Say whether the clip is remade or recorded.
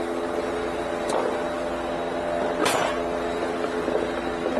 recorded